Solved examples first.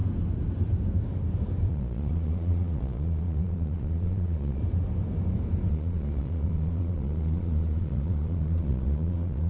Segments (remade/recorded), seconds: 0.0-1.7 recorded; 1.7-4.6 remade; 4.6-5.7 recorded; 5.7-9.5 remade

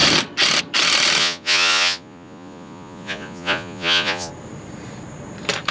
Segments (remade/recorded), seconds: 0.0-1.2 recorded; 1.2-4.3 remade; 4.3-5.7 recorded

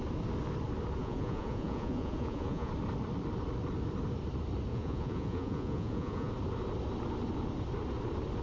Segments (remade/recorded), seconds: 0.0-1.0 recorded; 1.0-2.7 remade; 2.7-4.7 recorded; 4.7-6.3 remade; 6.3-8.4 recorded

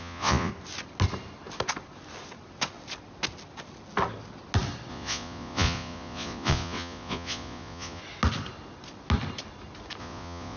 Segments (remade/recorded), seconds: 0.0-0.5 remade; 0.5-4.9 recorded; 4.9-8.0 remade; 8.0-10.0 recorded; 10.0-10.6 remade